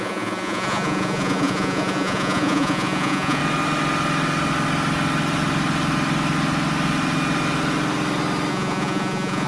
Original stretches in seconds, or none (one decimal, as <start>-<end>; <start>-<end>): 3.4-8.5